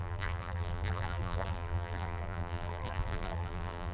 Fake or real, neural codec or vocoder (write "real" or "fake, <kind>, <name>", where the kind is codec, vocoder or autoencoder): fake, vocoder, BigVGAN v2